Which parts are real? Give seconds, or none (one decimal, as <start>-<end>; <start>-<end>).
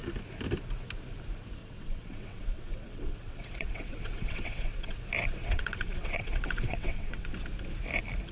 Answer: 0.0-1.6; 4.9-5.4; 7.3-8.3